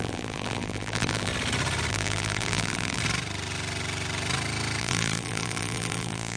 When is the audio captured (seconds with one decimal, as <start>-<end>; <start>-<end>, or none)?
1.3-1.9; 3.0-4.8